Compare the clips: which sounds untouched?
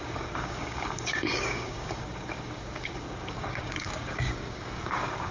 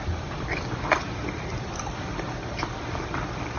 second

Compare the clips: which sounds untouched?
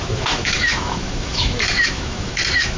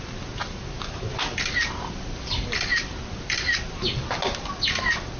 second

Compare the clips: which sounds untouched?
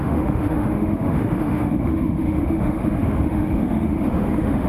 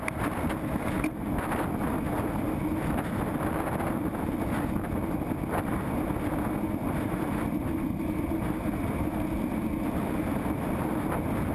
second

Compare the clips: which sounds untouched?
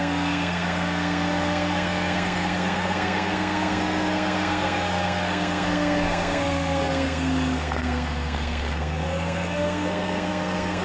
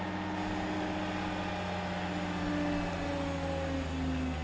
second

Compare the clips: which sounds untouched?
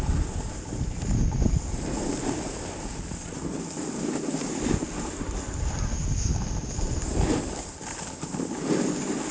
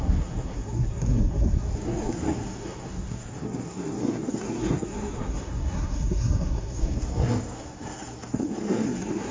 first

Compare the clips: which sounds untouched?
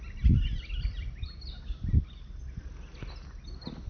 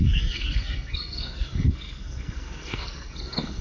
first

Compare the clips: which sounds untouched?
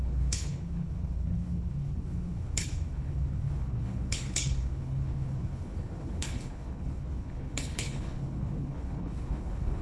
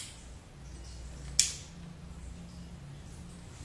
second